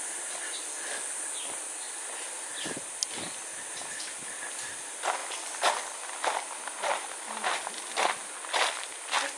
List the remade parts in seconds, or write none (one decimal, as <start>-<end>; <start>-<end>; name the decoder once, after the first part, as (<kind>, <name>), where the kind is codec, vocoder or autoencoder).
none

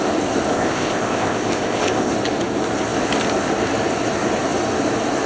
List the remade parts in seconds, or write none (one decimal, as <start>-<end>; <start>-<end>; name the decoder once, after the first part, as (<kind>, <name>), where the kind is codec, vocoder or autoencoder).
0.5-2.1 (codec, ZipCodec)